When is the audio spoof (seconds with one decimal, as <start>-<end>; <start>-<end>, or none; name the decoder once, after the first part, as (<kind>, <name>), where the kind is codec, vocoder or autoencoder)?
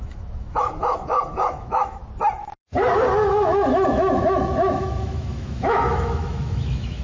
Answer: 0.0-2.0 (autoencoder, DAC-VAE); 3.3-7.0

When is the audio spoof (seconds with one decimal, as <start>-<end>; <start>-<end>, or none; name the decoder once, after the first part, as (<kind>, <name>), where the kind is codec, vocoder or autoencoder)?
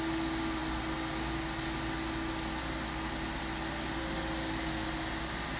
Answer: none